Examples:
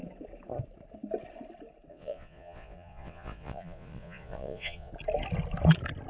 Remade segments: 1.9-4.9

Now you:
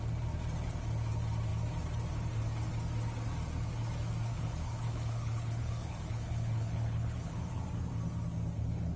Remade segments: 4.3-7.6

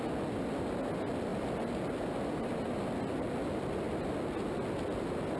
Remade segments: none

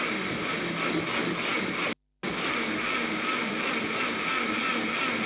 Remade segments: none

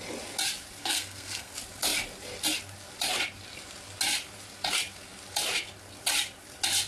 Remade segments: 0.8-1.5

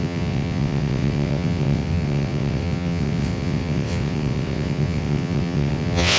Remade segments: 0.0-6.2

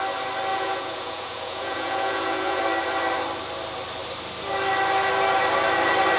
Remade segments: 0.5-2.6

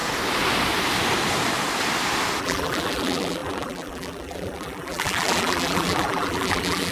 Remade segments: 2.4-6.9